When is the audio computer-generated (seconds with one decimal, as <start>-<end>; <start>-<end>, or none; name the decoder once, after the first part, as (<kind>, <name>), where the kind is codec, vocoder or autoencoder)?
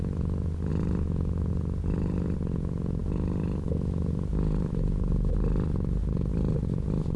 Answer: none